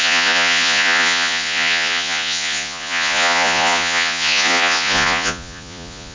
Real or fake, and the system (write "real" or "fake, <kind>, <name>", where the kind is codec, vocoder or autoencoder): fake, vocoder, Vocos